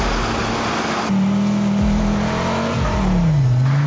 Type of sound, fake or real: real